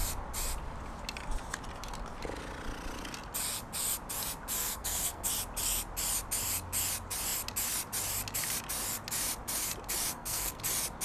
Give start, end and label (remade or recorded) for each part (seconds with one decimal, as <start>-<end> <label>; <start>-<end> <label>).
0.0-4.6 recorded; 4.6-5.3 remade; 5.3-10.1 recorded; 10.1-10.6 remade; 10.6-11.0 recorded